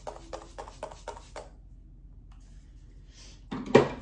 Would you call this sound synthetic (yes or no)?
no